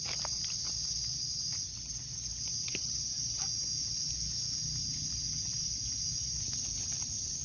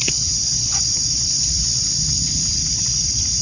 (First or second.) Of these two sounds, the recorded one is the first